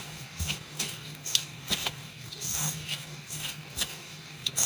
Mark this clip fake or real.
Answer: fake